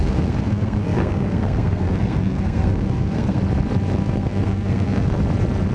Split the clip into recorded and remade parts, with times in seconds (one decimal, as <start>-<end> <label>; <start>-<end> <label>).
0.0-3.4 remade; 3.4-4.0 recorded; 4.0-5.2 remade; 5.2-5.7 recorded